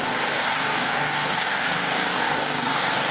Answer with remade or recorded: remade